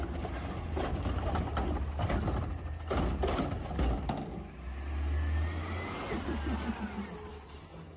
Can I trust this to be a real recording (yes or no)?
yes